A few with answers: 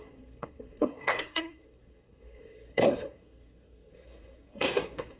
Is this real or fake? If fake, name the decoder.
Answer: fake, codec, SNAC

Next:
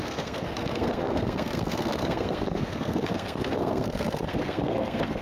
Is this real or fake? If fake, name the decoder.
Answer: fake, codec, SNAC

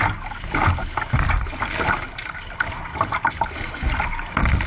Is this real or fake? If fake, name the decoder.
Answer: real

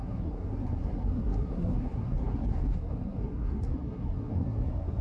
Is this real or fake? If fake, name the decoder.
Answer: fake, codec, SNAC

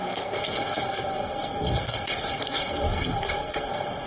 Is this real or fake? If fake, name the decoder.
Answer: fake, codec, SNAC